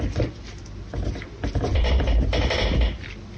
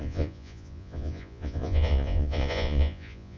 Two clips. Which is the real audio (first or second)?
first